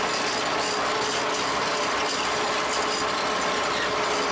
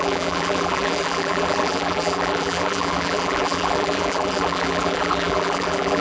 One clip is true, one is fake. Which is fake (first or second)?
second